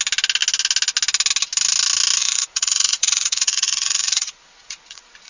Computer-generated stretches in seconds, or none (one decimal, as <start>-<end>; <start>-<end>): 2.2-5.3